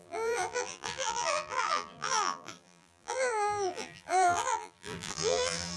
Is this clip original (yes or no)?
no